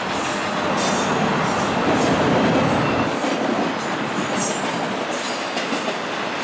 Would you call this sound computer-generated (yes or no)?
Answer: no